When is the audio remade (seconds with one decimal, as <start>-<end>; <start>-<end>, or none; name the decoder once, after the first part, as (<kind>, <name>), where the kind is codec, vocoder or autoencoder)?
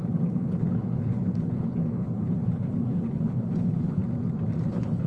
0.0-4.0 (codec, HILCodec); 4.6-5.1